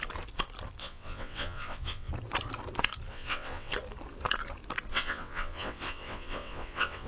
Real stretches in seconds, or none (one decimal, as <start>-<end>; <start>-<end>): 0.0-0.8; 2.1-3.1; 3.7-4.9